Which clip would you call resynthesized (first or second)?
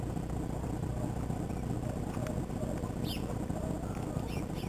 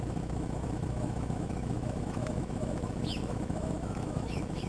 second